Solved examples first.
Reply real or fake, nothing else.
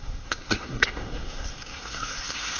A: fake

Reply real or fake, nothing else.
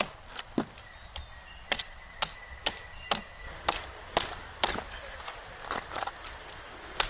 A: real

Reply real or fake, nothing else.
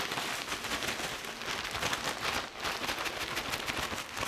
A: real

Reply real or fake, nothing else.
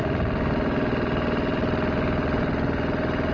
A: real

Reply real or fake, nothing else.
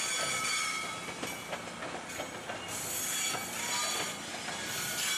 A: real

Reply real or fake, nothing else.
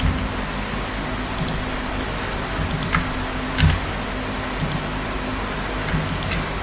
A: real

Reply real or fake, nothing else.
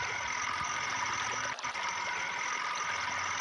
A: real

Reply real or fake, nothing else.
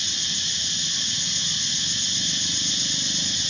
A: real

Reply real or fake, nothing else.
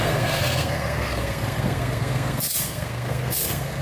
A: fake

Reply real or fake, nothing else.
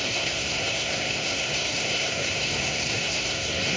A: fake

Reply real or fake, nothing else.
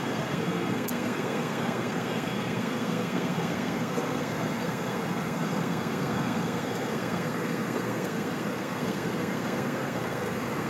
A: fake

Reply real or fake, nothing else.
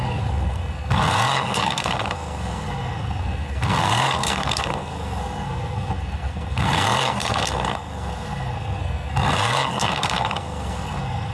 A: fake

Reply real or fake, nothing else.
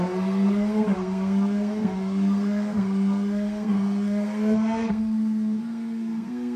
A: fake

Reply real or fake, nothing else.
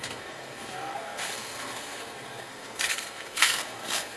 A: fake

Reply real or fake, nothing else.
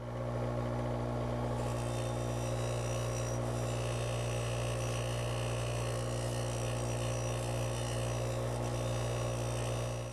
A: real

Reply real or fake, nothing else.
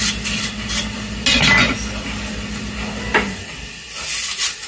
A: real